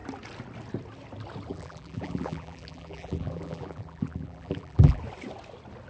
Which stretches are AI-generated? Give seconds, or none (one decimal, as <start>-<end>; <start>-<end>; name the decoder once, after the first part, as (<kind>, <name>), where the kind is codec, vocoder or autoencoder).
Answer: 1.5-5.0 (vocoder, BigVGAN v2)